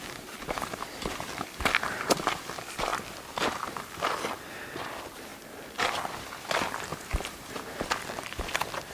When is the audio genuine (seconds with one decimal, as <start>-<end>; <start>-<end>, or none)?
5.3-6.2